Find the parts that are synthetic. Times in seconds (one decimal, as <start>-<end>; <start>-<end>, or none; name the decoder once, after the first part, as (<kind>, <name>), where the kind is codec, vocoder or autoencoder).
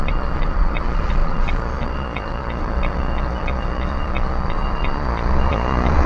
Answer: 0.0-6.1 (vocoder, Vocos)